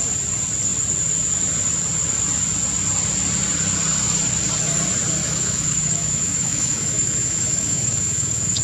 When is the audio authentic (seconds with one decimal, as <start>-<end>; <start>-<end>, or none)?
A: 0.0-5.2